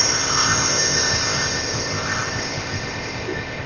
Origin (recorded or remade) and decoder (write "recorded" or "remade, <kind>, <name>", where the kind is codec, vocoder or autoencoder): remade, codec, ZipCodec